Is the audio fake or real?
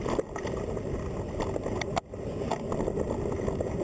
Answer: real